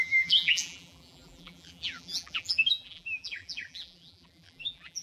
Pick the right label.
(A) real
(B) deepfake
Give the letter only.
B